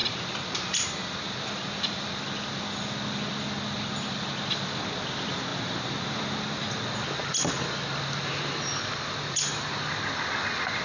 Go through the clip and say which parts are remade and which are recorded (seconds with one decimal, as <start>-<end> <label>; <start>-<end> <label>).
0.0-10.8 recorded